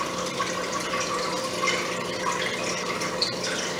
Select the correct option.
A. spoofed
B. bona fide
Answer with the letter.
B